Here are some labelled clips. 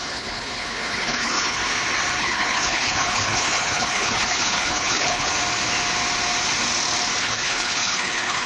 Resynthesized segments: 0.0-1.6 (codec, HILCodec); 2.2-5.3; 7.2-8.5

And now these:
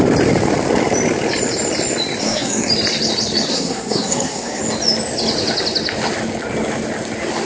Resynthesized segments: 2.2-2.7 (codec, SNAC); 3.5-4.6